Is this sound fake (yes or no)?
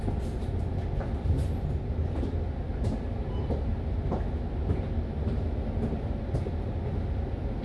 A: no